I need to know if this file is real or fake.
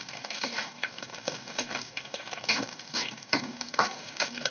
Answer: fake